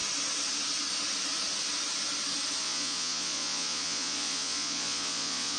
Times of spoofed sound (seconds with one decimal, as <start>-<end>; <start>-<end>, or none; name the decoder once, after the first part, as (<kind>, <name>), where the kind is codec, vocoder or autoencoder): 2.6-5.6 (vocoder, Vocos)